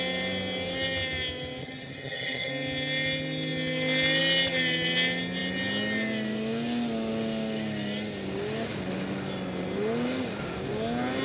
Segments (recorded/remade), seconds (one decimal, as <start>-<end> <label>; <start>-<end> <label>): 0.0-1.6 recorded; 1.6-2.5 remade; 2.5-11.2 recorded